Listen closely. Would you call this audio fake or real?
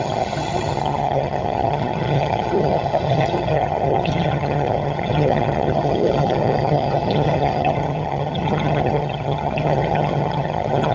fake